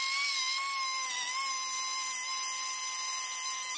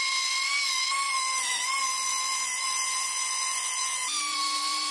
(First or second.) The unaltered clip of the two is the first